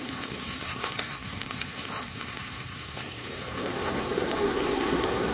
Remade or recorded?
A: remade